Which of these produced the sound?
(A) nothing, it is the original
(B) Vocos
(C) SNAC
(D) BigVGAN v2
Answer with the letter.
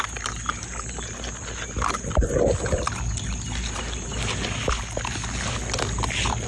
A